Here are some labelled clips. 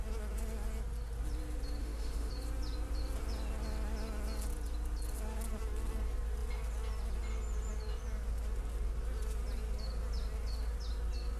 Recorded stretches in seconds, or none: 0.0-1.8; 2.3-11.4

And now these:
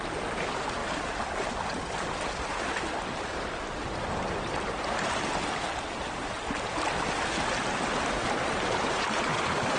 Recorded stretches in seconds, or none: 0.0-9.8